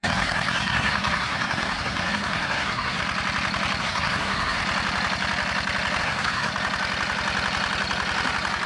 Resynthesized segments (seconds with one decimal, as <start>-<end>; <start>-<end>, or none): 0.0-3.0; 3.8-4.6; 6.0-6.5